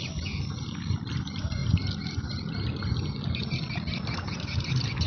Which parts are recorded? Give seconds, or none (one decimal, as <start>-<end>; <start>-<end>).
0.0-5.1